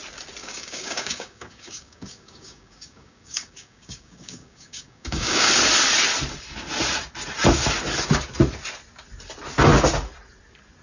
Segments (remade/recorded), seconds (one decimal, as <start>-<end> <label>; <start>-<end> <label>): 0.0-0.4 recorded; 0.4-5.5 remade; 5.5-10.8 recorded